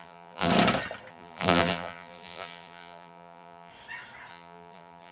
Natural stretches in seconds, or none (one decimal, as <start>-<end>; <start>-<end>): 0.5-1.1; 3.7-4.3

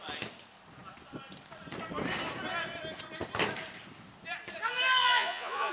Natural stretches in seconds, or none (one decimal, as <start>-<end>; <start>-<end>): 0.0-5.0

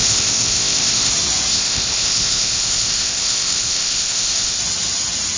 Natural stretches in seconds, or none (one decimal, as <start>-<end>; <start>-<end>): 1.1-1.5; 4.6-5.4

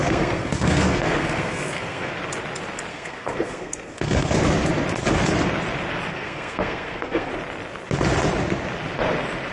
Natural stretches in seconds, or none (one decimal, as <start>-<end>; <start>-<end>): 2.1-2.9; 4.4-6.1; 7.3-9.5

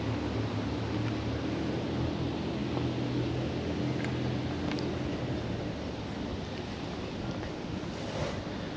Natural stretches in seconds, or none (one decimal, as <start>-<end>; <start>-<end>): 0.0-8.8

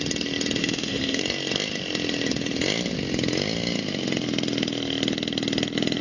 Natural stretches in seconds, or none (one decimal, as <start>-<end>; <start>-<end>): 0.0-0.6; 1.2-6.0

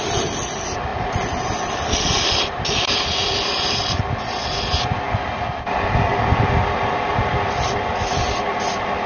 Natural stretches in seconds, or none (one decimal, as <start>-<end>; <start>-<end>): 0.0-9.1

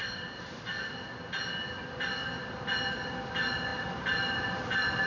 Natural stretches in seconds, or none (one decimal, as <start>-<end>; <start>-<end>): 0.6-3.7; 4.6-5.1